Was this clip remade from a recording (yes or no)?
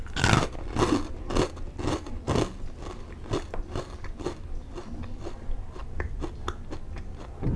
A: no